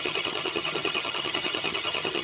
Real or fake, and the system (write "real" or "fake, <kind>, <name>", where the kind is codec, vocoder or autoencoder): fake, vocoder, HiFi-GAN